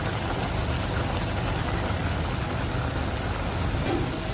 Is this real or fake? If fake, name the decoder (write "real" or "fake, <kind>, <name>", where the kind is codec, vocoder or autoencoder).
real